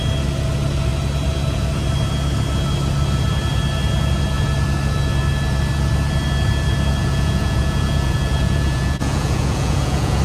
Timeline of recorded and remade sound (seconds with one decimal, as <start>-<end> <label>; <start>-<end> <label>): 0.0-7.0 recorded; 7.0-10.2 remade